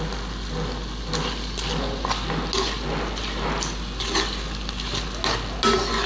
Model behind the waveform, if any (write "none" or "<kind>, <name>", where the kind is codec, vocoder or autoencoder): none